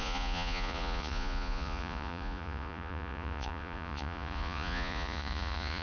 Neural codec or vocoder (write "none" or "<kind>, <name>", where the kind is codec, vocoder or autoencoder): vocoder, Vocos